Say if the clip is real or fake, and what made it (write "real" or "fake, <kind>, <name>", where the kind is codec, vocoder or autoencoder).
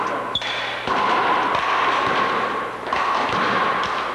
real